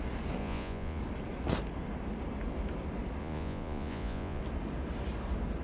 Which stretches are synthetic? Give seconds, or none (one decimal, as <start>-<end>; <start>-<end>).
0.4-1.0; 3.2-4.4